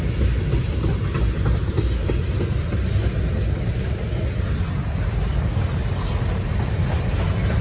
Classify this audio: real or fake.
real